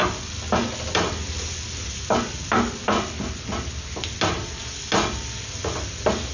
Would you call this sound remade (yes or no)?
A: no